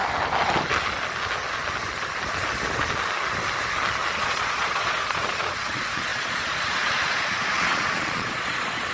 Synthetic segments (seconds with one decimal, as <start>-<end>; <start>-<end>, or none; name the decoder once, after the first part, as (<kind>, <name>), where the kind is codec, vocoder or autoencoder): 4.2-8.9 (vocoder, Vocos)